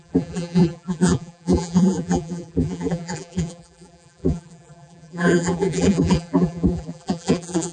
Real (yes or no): no